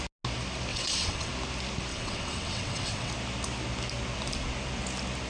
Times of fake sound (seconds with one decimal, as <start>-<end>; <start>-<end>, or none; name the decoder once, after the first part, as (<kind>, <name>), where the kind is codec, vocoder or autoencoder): 0.7-1.3 (vocoder, WaveNeXt); 1.9-3.1